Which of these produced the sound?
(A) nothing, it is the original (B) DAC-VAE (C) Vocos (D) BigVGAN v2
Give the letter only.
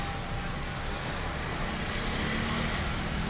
A